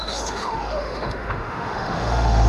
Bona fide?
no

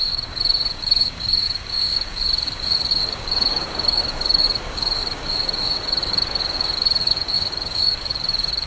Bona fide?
no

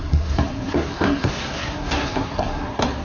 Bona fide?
no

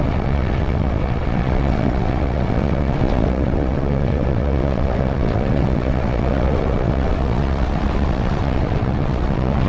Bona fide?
no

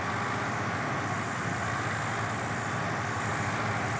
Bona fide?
yes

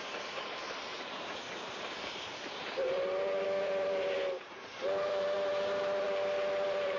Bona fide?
no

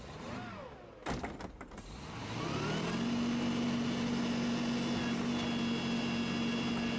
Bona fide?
yes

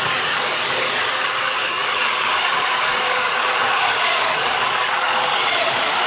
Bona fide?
no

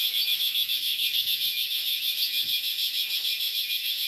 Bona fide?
no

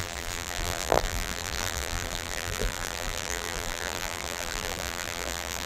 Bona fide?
no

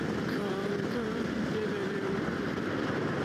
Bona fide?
no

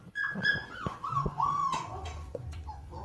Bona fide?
no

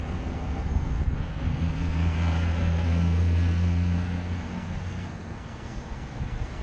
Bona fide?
no